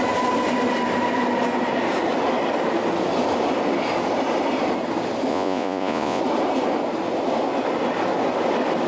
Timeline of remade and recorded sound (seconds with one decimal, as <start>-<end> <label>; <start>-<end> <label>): 0.0-5.3 recorded; 5.3-6.2 remade; 6.2-8.9 recorded